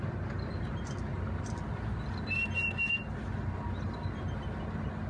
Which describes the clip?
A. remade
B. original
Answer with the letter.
B